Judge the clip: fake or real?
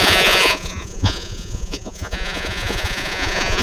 fake